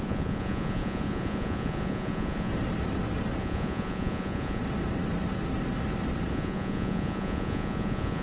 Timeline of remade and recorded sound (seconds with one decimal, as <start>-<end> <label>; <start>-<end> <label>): 0.0-2.5 remade; 2.5-3.4 recorded; 3.4-4.6 remade; 4.6-6.3 recorded; 6.3-8.2 remade